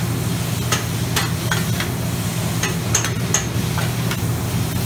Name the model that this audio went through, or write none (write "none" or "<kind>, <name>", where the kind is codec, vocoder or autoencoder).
none